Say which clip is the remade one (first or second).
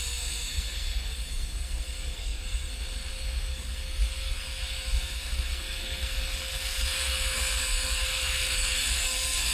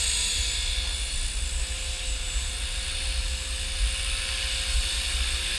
first